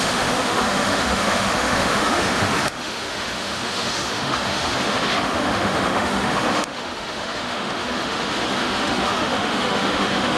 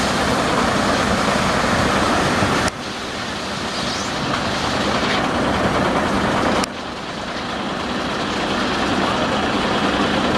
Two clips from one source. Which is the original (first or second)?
second